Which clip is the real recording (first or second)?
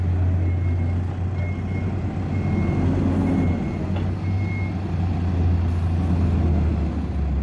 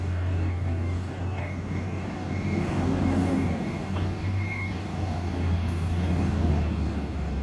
first